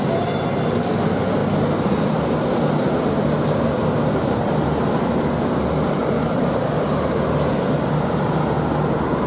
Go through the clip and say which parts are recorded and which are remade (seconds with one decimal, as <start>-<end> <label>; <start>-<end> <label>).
0.0-9.3 recorded